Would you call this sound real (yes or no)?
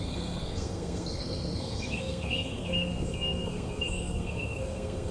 no